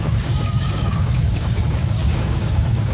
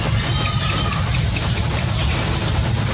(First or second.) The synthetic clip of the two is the first